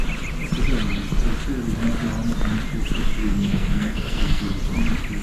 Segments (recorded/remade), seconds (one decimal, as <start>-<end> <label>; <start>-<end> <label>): 0.0-3.2 recorded; 3.2-4.4 remade; 4.4-5.2 recorded